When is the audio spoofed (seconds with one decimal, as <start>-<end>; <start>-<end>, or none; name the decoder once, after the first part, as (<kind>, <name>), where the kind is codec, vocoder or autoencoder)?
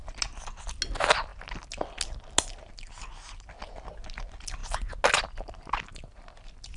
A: none